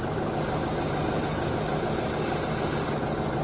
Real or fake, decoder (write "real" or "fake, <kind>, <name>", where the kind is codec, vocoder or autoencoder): real